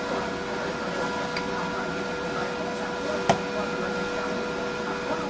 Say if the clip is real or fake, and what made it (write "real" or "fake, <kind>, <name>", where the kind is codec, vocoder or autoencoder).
real